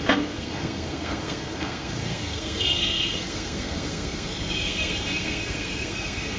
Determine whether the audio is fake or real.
fake